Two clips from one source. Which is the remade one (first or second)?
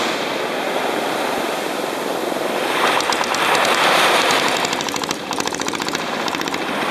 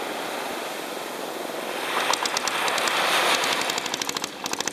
first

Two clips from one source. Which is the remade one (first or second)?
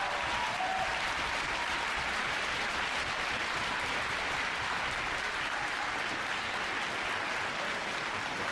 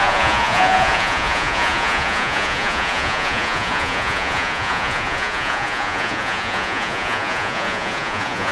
second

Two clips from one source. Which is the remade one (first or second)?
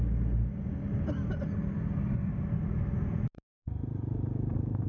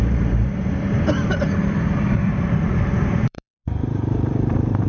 second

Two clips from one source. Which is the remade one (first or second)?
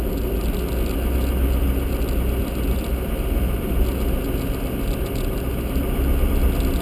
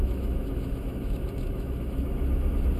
second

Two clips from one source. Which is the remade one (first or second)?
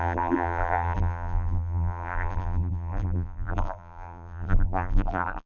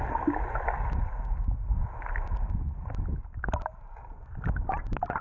first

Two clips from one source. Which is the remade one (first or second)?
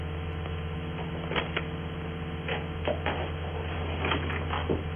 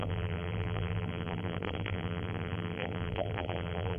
second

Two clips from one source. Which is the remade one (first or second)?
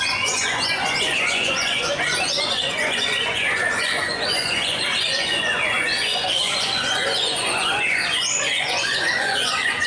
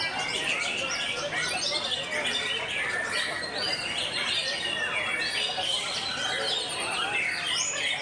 first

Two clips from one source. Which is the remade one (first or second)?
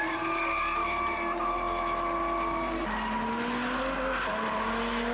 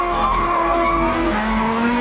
second